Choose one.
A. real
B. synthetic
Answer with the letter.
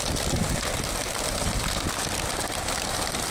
A